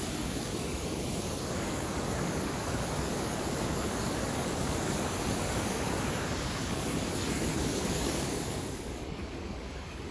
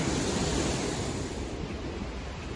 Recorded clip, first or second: second